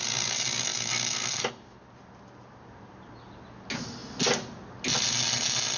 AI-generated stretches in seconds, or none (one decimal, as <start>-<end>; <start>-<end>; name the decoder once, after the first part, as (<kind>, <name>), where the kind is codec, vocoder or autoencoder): none

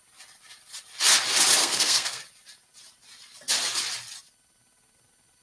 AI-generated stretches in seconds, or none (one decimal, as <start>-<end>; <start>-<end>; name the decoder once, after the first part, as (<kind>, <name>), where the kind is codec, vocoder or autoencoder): 1.6-2.2 (codec, SNAC)

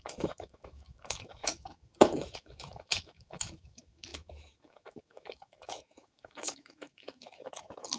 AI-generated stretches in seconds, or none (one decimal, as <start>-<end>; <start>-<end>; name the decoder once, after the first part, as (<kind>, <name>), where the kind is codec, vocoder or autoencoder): 0.0-8.0 (autoencoder, DAC-VAE)

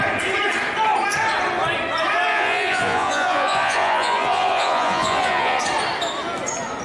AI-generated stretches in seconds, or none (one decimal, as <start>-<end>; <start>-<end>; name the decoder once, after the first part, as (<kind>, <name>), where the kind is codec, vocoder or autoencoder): 2.3-5.6 (vocoder, Vocos)